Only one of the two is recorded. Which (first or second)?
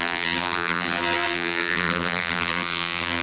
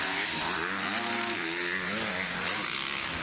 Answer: second